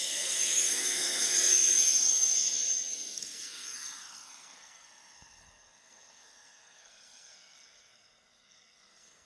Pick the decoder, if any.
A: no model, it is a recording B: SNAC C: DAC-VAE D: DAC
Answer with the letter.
B